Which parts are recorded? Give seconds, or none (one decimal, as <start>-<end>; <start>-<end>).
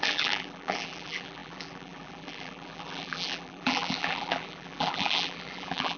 none